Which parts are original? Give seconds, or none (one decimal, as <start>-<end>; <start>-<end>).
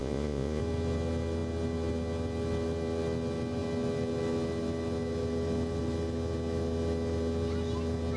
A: 0.6-8.2